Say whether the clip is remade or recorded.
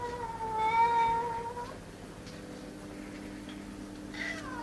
recorded